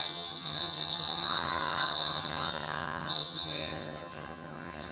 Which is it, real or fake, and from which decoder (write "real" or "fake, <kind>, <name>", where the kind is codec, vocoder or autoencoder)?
fake, vocoder, HiFi-GAN